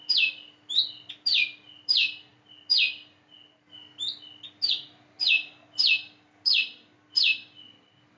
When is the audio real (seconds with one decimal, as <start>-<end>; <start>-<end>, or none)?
0.0-8.2

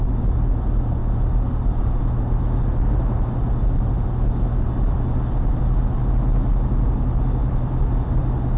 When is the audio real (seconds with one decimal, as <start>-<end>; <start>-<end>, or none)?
0.0-1.0; 1.8-7.4; 8.2-8.6

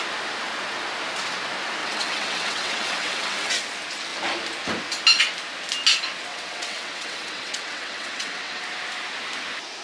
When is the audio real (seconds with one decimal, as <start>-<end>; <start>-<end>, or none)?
0.0-1.8; 3.6-6.3; 8.6-9.8

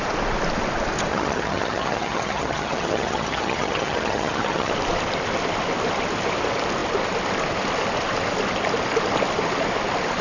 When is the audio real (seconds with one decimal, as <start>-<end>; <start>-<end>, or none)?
0.0-1.1; 4.7-10.2

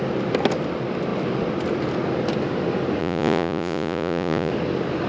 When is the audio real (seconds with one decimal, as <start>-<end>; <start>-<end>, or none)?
0.0-3.0; 4.5-5.1

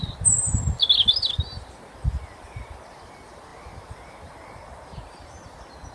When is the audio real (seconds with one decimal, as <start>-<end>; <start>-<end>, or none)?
0.0-5.9

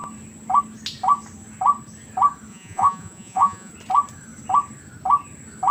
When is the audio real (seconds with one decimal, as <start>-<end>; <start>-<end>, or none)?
0.0-2.5; 3.7-5.7

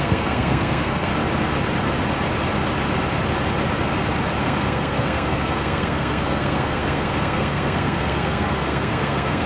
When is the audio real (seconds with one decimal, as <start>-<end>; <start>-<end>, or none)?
1.1-4.4